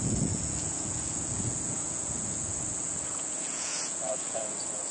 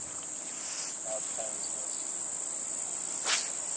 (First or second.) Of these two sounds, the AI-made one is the first